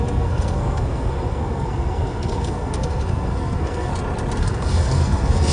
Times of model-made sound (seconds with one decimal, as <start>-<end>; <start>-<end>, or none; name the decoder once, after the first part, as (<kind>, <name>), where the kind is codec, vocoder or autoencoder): 0.0-3.9 (codec, SNAC); 4.4-5.5